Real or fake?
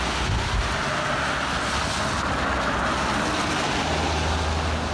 real